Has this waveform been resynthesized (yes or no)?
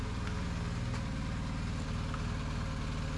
no